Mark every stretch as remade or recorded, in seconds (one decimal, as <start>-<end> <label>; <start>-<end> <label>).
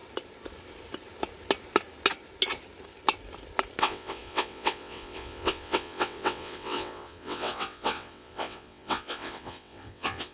0.0-3.8 recorded; 3.8-10.3 remade